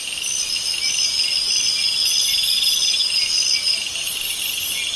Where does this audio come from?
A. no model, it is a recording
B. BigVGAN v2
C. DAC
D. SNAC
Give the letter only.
A